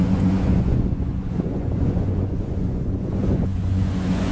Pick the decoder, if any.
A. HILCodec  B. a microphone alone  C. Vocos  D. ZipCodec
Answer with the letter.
C